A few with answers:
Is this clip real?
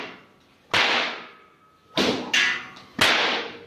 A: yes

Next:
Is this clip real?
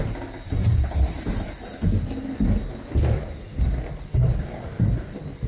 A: yes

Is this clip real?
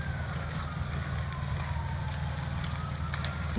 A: yes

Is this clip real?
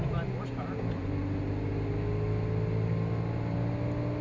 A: yes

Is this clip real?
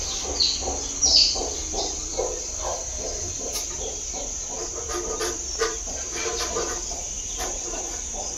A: no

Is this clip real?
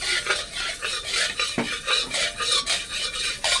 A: yes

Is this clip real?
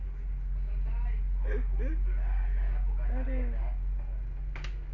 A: yes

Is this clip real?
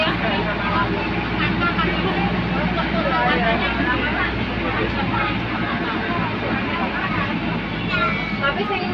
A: yes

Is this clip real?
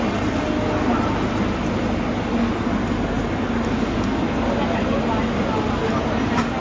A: yes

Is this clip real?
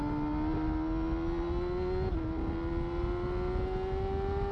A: yes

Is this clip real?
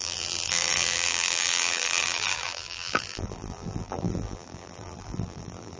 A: no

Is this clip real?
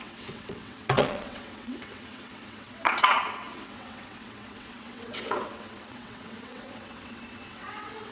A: no